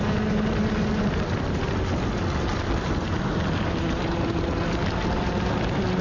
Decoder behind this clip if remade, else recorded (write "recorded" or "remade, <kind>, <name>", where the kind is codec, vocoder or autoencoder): recorded